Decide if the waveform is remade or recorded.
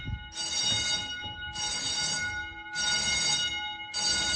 recorded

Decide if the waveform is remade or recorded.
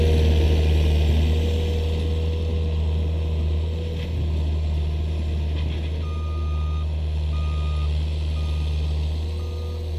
recorded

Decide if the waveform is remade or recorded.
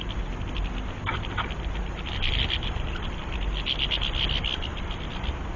recorded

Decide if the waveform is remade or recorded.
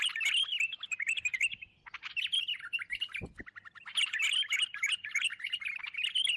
recorded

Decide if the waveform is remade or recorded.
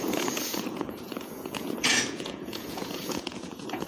remade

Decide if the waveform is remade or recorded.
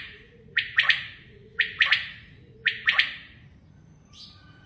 remade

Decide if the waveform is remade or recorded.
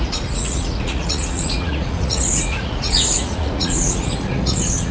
remade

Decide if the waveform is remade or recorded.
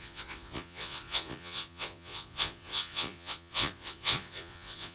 remade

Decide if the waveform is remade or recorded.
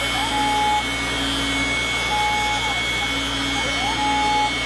recorded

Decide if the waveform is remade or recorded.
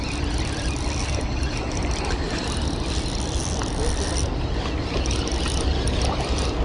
recorded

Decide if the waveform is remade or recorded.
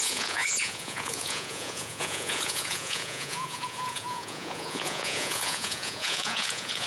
remade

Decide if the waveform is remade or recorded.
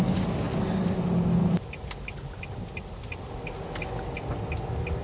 recorded